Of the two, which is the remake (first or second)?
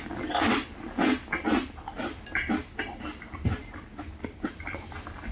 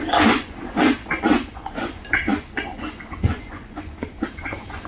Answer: second